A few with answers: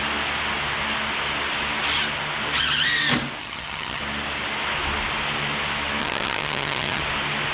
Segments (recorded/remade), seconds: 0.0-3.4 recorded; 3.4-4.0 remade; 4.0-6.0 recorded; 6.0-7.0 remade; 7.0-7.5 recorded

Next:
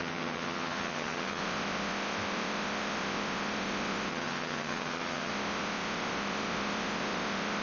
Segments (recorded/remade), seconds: 0.0-1.4 remade; 1.4-4.1 recorded; 4.1-5.3 remade; 5.3-7.6 recorded

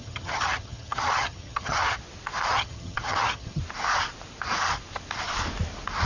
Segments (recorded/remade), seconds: 0.0-2.0 remade; 2.0-2.5 recorded; 2.5-3.6 remade; 3.6-6.1 recorded